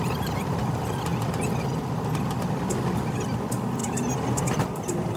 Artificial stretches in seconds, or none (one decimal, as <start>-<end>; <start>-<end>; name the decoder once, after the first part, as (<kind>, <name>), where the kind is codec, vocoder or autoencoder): 0.0-1.1 (vocoder, BigVGAN v2); 2.6-3.8; 4.4-5.2